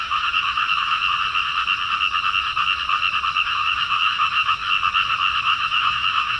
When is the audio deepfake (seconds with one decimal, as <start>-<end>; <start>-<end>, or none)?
0.0-1.0; 3.4-4.6; 5.4-6.4